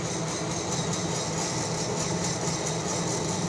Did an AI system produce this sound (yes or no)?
no